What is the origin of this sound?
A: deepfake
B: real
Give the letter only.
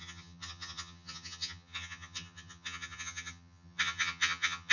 A